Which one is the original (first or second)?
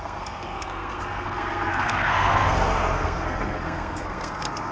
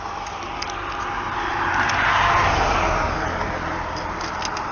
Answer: second